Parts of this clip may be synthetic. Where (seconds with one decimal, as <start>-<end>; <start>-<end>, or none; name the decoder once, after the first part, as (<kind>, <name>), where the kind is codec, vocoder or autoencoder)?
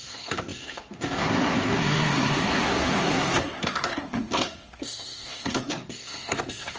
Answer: 0.0-6.8 (codec, SNAC)